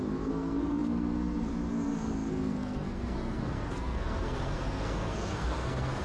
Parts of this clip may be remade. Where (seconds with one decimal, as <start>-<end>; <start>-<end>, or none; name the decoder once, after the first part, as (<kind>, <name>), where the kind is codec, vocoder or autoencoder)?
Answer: 0.0-6.0 (codec, SNAC)